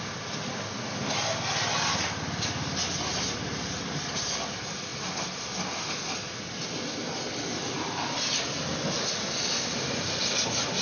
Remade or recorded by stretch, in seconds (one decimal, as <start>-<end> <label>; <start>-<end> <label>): 0.0-10.8 recorded